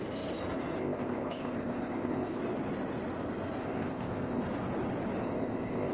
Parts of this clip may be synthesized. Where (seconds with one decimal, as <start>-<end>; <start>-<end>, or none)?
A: 0.8-2.4; 3.6-4.4; 5.2-5.9